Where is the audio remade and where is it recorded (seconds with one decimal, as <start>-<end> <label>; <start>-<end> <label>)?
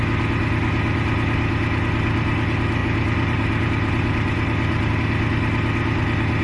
0.0-2.8 recorded; 2.8-4.9 remade; 4.9-6.4 recorded